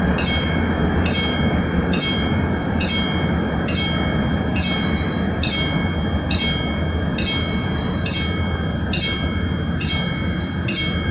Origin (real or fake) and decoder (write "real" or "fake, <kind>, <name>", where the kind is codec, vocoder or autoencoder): real